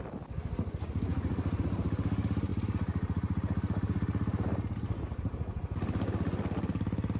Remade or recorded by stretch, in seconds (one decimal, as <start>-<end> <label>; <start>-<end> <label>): 0.0-1.1 recorded; 1.1-1.6 remade; 1.6-7.2 recorded